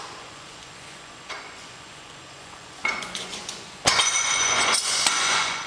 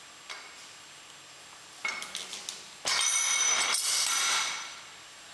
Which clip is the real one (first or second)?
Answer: second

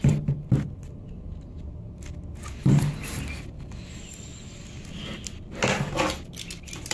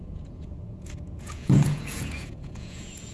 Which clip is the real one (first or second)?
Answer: first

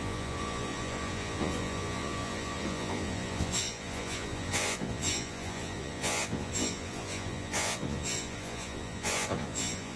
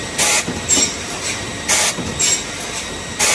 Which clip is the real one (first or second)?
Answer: second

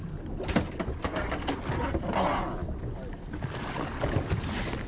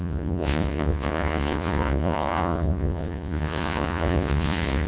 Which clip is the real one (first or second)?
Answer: first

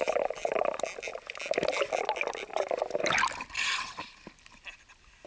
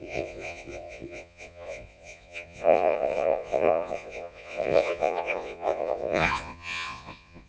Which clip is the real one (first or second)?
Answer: first